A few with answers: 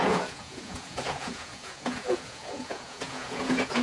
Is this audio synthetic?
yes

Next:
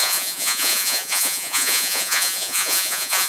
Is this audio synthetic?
yes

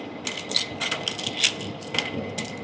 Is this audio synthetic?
no